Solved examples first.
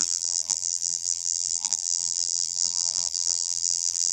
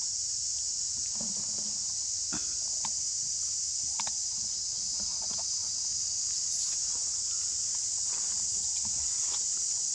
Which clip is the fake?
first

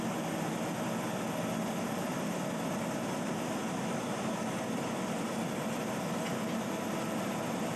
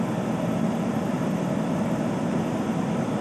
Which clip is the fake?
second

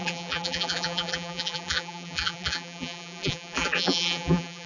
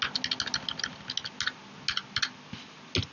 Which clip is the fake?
first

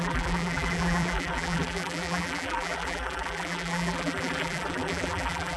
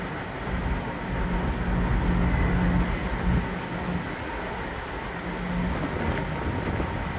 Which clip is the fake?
first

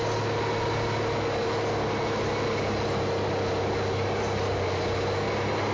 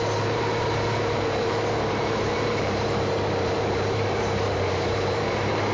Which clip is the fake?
second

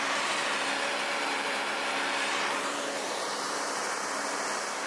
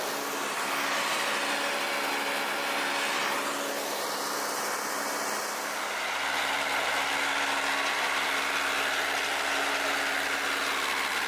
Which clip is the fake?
first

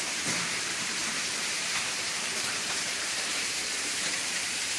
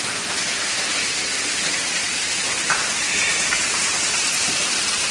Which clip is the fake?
first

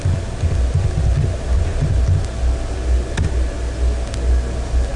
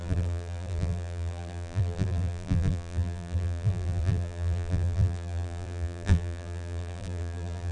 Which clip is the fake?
second